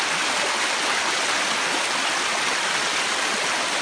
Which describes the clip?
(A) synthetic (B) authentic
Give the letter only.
B